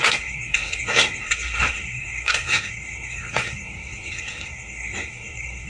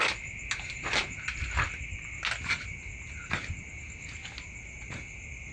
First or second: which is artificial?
first